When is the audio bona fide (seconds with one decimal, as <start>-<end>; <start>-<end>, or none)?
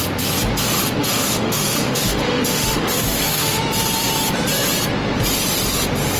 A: 0.0-1.0; 3.6-6.2